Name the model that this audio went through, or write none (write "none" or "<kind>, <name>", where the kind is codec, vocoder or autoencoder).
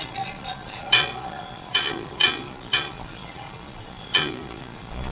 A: vocoder, Vocos